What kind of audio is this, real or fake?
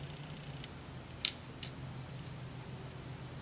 real